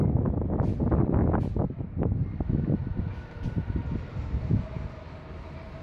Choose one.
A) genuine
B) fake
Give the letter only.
A